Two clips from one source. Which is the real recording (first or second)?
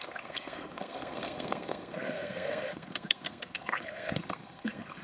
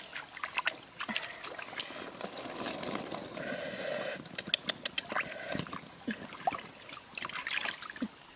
second